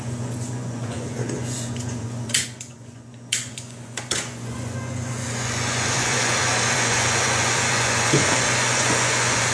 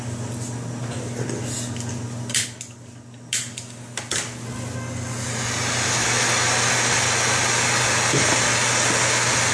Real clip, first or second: second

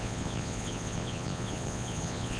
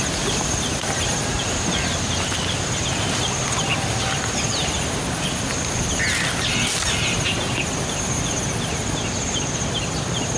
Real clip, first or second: second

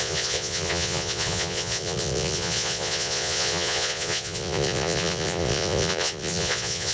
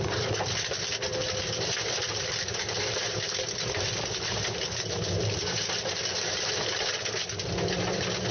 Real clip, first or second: second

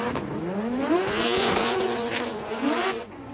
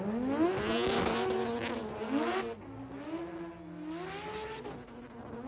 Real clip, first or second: second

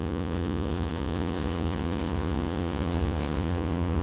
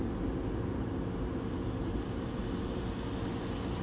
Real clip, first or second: second